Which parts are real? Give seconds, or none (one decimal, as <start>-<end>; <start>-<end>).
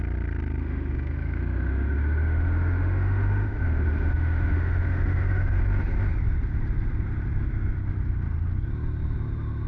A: 0.0-0.6; 5.6-9.7